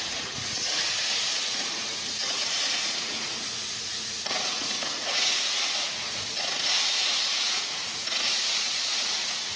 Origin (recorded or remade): remade